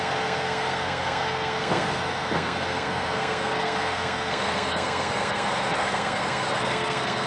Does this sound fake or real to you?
fake